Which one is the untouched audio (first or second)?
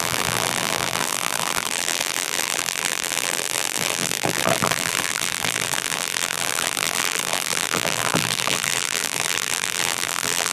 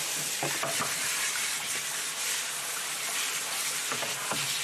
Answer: second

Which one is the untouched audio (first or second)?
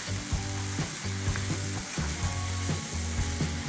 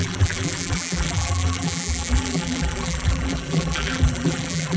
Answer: first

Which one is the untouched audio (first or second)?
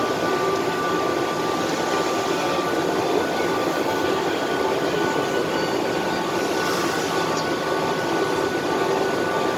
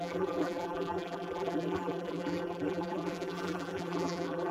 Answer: first